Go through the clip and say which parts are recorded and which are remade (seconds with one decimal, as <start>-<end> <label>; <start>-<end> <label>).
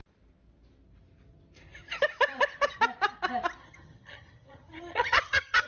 0.0-3.6 recorded; 3.6-5.7 remade